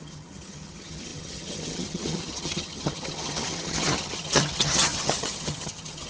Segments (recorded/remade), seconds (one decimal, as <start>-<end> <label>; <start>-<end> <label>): 0.0-6.1 remade